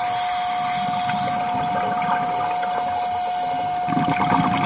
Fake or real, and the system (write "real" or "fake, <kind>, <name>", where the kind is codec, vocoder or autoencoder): real